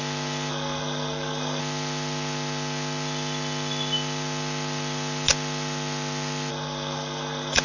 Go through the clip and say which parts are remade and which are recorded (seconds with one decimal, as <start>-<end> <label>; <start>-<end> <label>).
0.0-0.5 recorded; 0.5-1.6 remade; 1.6-6.5 recorded; 6.5-7.6 remade